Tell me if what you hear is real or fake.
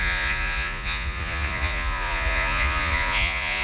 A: fake